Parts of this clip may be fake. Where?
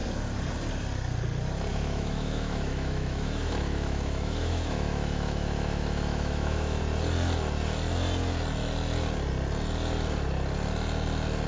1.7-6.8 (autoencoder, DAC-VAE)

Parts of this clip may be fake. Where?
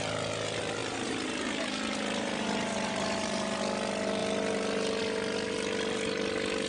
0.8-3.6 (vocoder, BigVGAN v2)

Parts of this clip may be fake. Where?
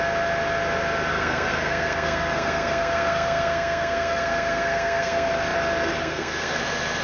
1.1-5.3 (codec, SNAC); 6.0-6.6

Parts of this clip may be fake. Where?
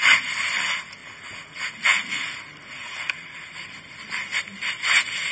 1.0-2.4 (vocoder, Vocos); 2.8-3.5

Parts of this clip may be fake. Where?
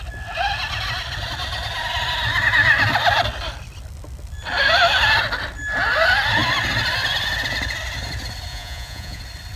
8.5-9.2 (vocoder, Vocos)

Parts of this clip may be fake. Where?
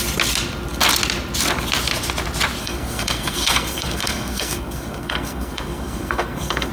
2.6-6.7 (codec, SNAC)